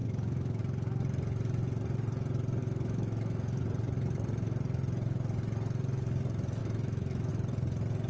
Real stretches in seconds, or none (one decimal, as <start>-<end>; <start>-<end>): 0.6-2.6; 3.6-6.6; 7.3-8.1